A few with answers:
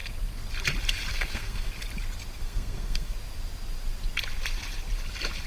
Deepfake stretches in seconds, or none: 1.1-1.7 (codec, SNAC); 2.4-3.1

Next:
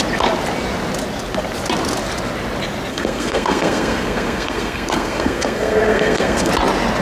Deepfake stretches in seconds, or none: 2.9-6.5 (codec, SNAC)

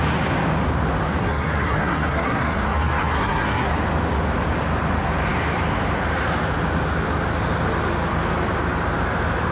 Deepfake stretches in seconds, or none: 1.2-3.7 (codec, SNAC)

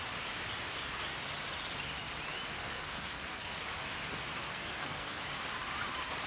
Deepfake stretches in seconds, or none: 2.5-3.6 (codec, SNAC); 4.4-5.2